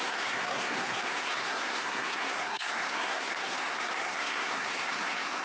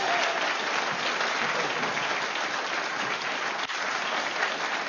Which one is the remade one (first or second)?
first